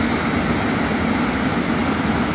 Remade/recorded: recorded